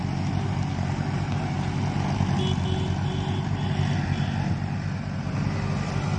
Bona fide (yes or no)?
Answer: yes